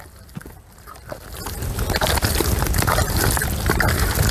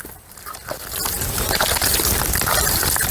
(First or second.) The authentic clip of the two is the second